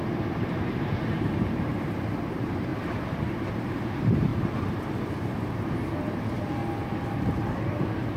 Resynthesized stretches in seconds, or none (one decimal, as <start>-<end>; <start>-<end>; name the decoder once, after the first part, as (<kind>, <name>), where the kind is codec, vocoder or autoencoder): 0.0-2.7 (vocoder, BigVGAN v2); 3.5-4.3; 5.1-6.6; 7.5-8.2